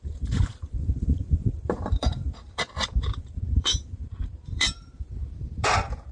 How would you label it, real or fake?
fake